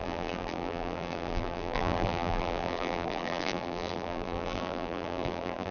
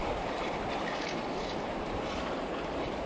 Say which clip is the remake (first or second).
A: first